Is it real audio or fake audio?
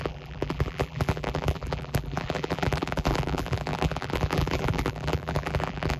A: fake